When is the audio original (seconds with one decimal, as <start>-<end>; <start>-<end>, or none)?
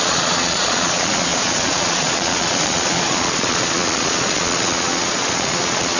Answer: none